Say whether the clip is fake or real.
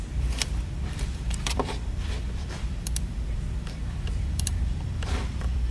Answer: fake